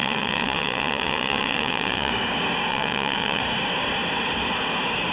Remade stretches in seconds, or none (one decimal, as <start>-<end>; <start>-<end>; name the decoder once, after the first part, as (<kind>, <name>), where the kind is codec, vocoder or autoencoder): 0.0-2.1 (vocoder, WaveNeXt); 2.7-3.4